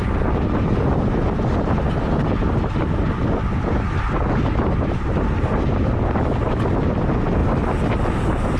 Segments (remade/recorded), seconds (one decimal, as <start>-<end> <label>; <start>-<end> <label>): 0.0-8.6 recorded